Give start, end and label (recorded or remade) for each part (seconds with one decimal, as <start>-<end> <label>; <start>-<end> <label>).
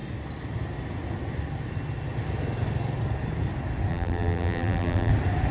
0.0-3.9 recorded; 3.9-5.1 remade; 5.1-5.5 recorded